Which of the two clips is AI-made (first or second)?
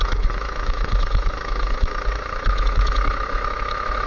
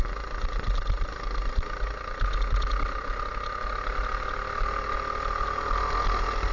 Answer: first